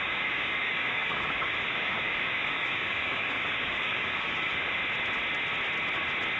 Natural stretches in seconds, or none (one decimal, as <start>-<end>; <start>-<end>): 4.8-6.4